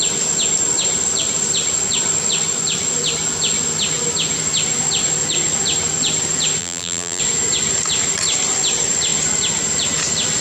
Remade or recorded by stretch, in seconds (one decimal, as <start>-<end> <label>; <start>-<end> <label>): 0.0-6.6 recorded; 6.6-7.2 remade; 7.2-10.4 recorded